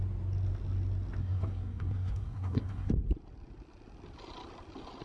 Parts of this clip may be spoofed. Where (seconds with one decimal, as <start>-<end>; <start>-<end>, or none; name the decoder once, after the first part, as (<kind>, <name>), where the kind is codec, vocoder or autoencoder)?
1.2-2.9 (codec, SNAC)